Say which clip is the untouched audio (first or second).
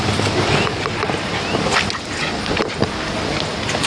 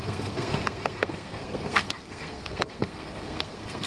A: first